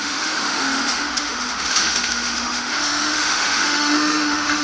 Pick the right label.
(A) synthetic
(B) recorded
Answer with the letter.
A